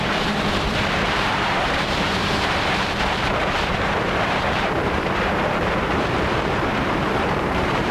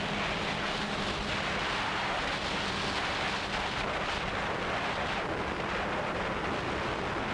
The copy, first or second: first